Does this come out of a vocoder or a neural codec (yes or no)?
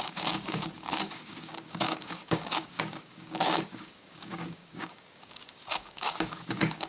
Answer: yes